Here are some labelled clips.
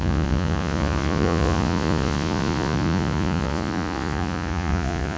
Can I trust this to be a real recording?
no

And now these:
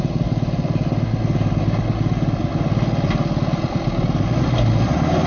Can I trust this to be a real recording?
yes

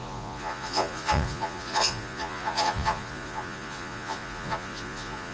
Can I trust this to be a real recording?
no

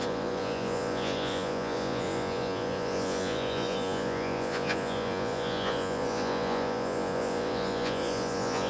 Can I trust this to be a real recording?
no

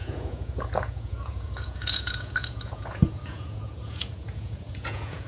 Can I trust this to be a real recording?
no